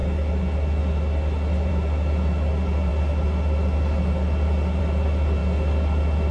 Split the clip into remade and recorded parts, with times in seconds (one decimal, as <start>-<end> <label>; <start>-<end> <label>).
0.0-6.3 recorded